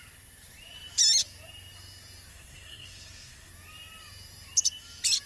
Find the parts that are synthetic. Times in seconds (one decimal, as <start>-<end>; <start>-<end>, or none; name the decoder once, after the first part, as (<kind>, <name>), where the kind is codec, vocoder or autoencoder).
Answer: 2.3-3.5 (codec, SNAC)